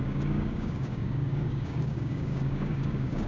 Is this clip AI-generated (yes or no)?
yes